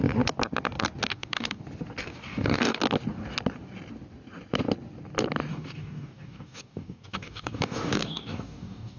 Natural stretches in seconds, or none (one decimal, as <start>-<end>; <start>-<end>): 0.0-1.1; 1.6-2.0; 2.8-5.5